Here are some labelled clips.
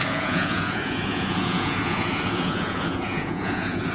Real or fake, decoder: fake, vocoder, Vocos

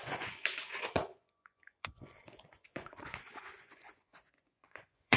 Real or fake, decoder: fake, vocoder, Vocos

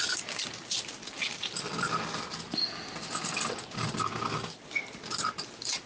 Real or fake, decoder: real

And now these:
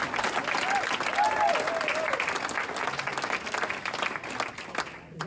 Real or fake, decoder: real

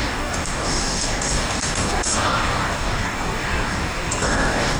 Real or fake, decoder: fake, codec, DAC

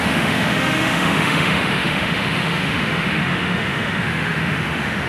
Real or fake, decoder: fake, autoencoder, DAC-VAE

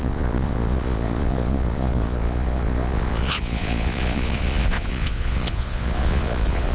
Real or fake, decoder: fake, vocoder, Vocos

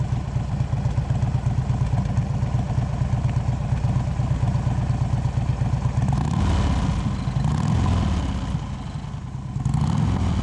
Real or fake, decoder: real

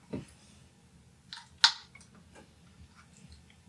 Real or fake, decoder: real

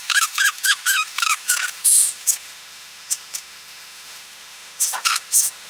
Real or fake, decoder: fake, autoencoder, DAC-VAE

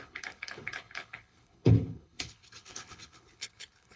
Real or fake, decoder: fake, codec, HILCodec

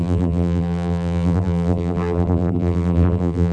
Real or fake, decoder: fake, vocoder, BigVGAN v2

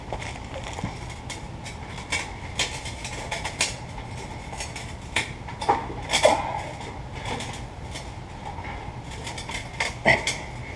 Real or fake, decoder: real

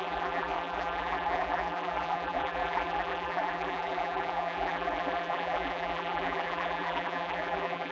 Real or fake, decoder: fake, vocoder, BigVGAN v2